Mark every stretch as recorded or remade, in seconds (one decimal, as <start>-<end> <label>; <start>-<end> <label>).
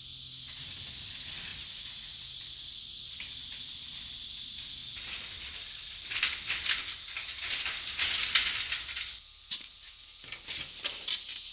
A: 0.0-1.5 recorded; 1.5-2.2 remade; 2.2-11.5 recorded